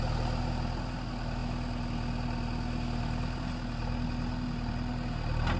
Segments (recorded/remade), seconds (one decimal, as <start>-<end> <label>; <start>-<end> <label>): 0.0-5.6 recorded